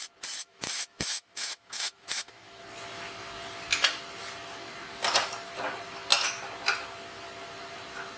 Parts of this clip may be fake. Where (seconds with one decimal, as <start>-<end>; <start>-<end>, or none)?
0.4-2.6